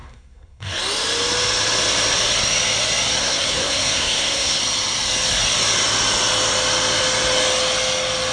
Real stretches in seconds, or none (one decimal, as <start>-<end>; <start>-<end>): 0.8-3.2; 4.6-8.3